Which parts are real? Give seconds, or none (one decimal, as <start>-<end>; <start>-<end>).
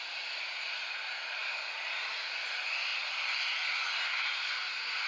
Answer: 0.0-5.1